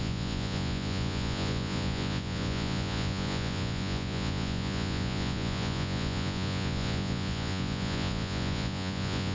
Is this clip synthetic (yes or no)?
yes